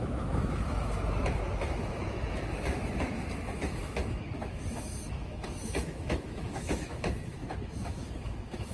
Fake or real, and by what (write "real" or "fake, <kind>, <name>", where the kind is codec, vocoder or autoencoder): fake, autoencoder, DAC-VAE